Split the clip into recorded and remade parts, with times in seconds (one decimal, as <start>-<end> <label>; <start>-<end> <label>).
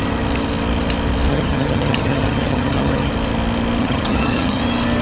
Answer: 0.0-1.3 recorded; 1.3-3.1 remade; 3.1-3.8 recorded; 3.8-4.6 remade; 4.6-5.0 recorded